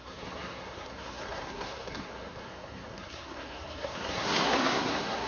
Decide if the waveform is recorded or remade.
remade